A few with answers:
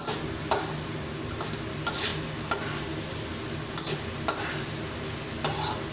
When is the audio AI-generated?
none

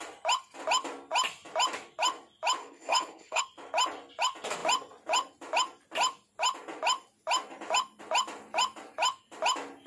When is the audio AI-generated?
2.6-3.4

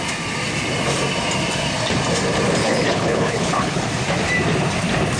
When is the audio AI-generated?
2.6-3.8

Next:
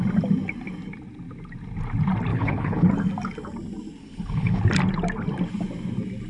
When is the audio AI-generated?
2.3-2.9; 4.0-4.6

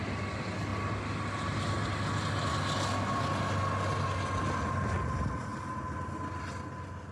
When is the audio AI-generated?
none